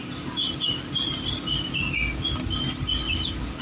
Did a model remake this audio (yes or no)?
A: no